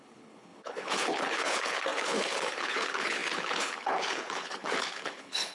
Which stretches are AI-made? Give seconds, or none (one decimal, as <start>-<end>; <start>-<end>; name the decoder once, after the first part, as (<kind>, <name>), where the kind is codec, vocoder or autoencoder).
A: 0.0-5.5 (codec, HILCodec)